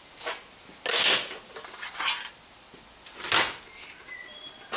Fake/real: real